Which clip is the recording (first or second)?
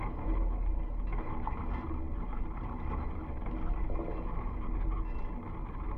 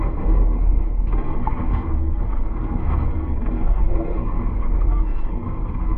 first